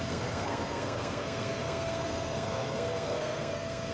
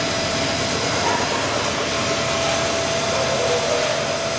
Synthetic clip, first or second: first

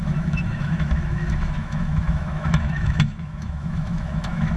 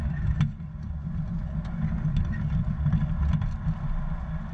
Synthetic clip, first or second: first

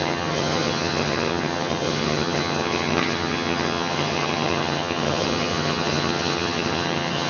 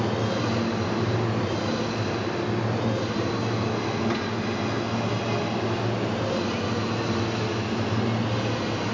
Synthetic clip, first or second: first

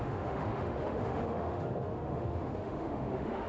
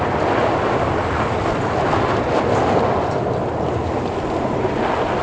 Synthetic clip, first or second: first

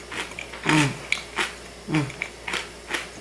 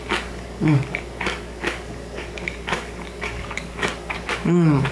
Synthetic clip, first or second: second